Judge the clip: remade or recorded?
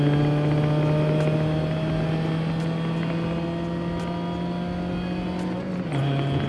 recorded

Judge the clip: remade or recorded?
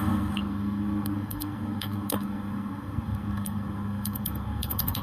remade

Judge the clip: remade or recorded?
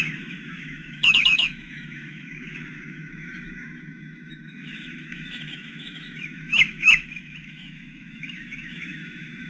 remade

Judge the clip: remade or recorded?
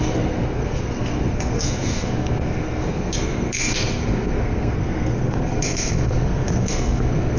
remade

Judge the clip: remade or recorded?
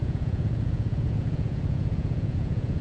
remade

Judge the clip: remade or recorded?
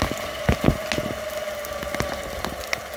recorded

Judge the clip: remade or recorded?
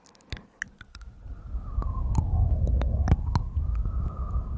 recorded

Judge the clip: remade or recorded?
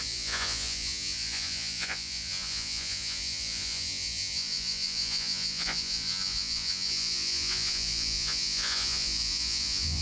remade